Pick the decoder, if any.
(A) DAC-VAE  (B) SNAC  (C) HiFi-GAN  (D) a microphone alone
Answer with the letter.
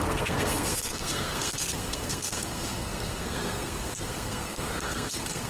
B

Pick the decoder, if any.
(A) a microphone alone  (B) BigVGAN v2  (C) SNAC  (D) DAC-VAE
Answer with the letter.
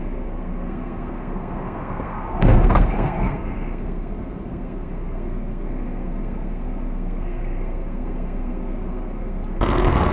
C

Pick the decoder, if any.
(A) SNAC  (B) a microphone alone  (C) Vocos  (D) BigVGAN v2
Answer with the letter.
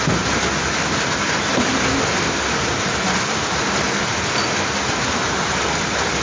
B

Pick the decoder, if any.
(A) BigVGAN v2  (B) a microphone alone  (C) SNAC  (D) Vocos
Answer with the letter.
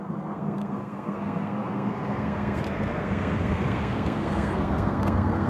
C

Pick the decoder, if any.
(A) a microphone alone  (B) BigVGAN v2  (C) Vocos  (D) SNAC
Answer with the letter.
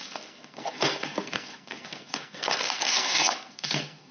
D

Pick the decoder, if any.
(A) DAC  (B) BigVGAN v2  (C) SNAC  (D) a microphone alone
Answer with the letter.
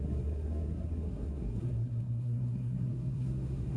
C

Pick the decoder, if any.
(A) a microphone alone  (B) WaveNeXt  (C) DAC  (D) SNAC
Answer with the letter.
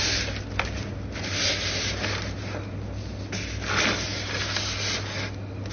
A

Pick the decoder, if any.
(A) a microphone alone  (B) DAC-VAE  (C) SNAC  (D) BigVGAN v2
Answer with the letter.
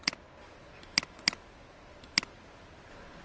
A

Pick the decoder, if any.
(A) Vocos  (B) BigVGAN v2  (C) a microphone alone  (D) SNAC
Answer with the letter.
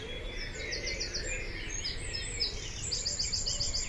C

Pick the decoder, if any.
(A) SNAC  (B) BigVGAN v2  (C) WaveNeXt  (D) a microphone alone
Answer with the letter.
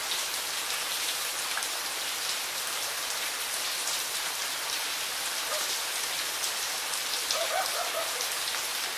D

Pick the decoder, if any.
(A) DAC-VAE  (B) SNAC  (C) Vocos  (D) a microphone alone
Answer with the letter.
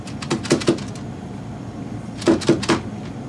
D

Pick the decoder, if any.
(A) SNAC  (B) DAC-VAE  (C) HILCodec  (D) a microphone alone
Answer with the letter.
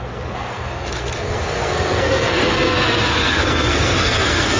A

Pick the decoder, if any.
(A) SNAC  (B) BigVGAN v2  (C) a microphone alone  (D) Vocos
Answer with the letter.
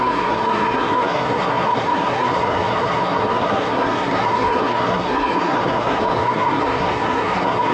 A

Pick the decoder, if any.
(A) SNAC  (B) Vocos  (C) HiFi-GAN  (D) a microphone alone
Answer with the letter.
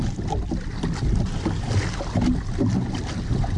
D